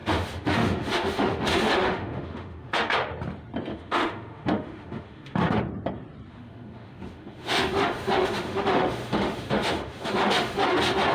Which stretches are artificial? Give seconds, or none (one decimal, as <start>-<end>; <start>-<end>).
0.0-2.9; 3.7-5.6; 6.3-10.6